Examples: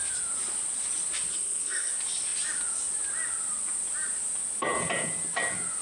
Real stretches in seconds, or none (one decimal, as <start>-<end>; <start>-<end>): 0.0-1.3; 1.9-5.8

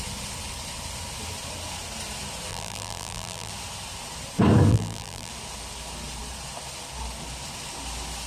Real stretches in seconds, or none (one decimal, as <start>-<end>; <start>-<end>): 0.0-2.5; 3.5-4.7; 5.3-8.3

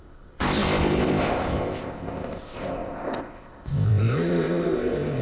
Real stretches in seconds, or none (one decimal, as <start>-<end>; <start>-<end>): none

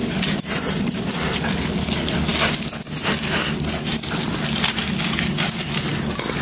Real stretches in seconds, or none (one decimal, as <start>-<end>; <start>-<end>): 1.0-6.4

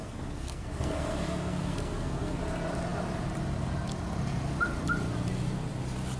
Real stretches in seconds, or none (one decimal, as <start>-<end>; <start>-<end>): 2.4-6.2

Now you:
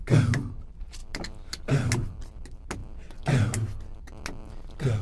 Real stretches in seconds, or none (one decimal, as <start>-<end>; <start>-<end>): 0.0-5.0